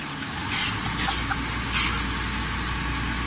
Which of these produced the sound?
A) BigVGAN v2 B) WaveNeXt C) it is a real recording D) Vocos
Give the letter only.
C